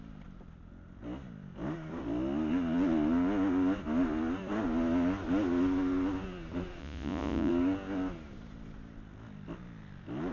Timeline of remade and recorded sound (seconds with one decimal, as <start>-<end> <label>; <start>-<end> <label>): 0.0-6.8 recorded; 6.8-7.5 remade; 7.5-10.3 recorded